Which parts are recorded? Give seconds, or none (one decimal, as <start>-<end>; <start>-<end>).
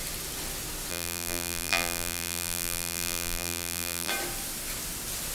0.0-0.9; 4.1-5.3